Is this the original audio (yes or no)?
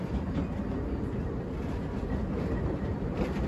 yes